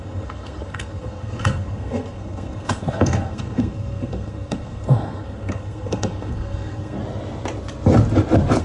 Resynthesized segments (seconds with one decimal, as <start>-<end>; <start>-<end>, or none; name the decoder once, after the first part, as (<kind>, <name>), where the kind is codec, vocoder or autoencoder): 0.0-7.0 (codec, SNAC)